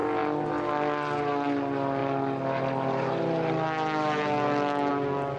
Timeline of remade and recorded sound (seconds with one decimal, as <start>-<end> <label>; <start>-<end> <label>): 0.0-5.4 recorded